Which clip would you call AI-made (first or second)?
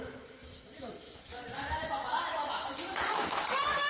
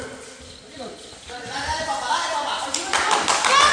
first